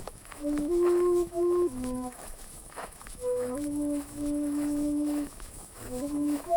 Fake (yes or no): yes